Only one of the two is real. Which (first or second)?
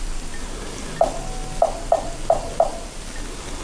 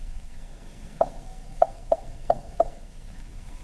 first